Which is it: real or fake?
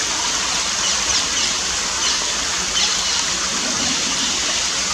real